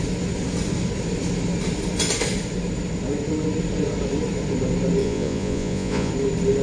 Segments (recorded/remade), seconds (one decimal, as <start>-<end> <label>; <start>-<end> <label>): 0.0-5.0 recorded; 5.0-6.1 remade; 6.1-6.6 recorded